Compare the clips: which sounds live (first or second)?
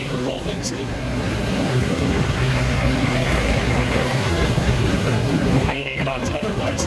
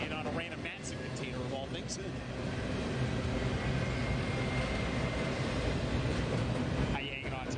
second